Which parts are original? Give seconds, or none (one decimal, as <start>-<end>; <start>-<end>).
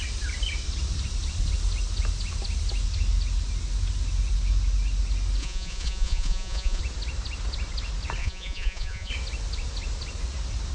0.0-5.4; 6.8-8.2; 9.1-10.7